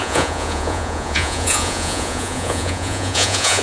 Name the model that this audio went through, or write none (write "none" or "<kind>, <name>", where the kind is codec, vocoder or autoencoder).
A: vocoder, Vocos